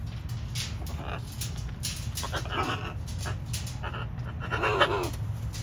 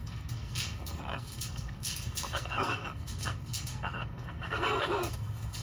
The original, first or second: first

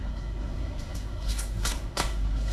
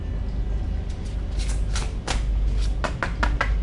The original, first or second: second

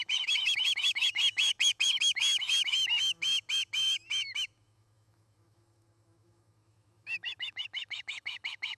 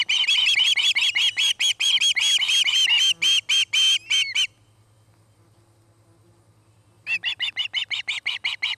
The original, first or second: second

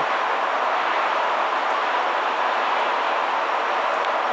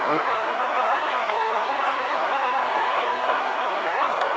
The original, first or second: first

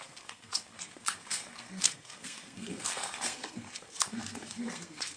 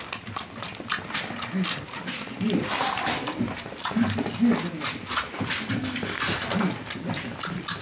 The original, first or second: second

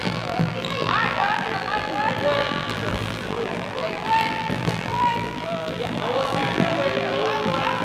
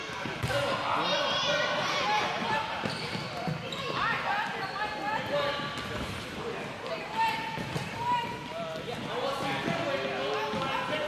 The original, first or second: second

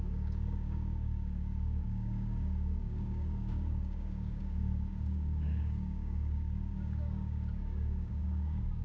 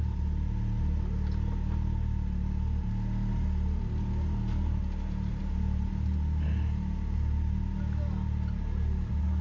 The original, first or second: second